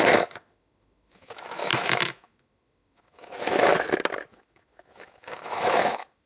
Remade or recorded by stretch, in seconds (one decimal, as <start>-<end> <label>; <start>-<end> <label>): 0.0-3.7 remade; 3.7-4.3 recorded; 4.3-6.3 remade